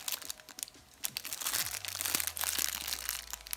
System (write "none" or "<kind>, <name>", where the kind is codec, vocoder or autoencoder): none